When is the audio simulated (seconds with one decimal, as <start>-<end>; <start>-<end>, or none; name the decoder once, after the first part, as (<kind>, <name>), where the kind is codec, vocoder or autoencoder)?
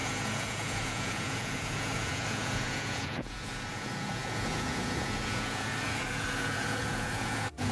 0.0-7.7 (vocoder, Vocos)